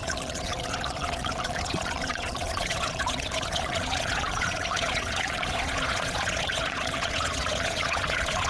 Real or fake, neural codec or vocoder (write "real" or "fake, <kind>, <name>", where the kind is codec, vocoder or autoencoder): fake, vocoder, Vocos